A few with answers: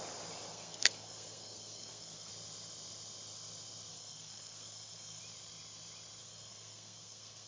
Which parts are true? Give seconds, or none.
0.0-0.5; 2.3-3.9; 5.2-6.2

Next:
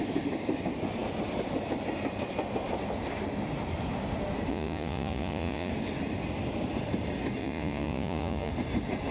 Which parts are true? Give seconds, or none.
0.0-4.5; 5.7-7.4; 8.5-9.1

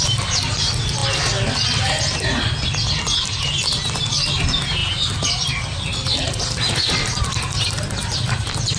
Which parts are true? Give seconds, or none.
0.0-8.8

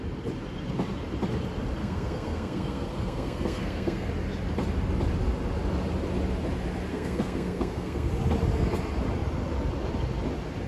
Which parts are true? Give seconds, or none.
0.0-1.8; 4.1-6.9; 8.1-10.7

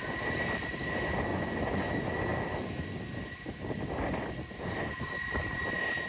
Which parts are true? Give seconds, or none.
0.0-1.3; 1.9-6.1